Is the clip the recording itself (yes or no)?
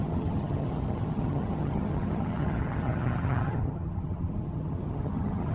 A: no